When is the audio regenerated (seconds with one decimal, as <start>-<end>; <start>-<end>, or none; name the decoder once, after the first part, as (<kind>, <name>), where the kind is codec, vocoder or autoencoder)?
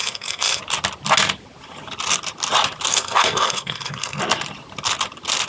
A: 0.0-0.6 (codec, SNAC); 2.9-4.2